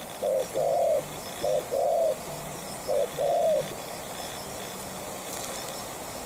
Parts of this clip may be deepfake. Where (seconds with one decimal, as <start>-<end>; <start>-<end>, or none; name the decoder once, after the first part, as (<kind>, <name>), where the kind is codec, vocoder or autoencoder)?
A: 0.4-3.7 (vocoder, BigVGAN v2)